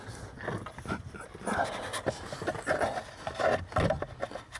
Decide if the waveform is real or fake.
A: real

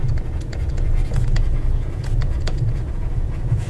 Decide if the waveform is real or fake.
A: fake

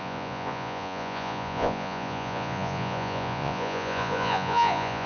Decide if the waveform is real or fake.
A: fake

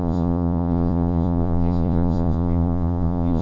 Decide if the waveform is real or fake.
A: fake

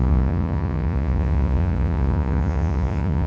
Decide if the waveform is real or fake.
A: fake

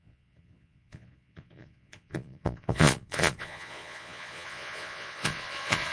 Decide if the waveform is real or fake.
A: fake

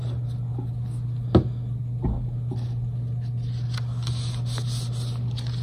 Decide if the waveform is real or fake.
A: real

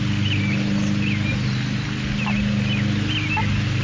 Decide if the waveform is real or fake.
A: real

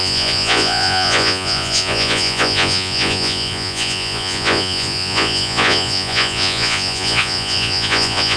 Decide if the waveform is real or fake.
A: fake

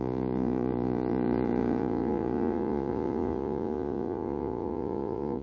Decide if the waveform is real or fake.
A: fake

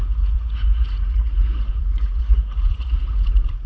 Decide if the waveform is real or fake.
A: fake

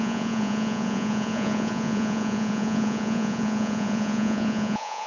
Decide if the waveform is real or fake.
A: fake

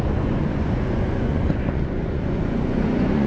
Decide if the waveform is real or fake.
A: fake